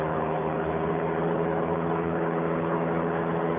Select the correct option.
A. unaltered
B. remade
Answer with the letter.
B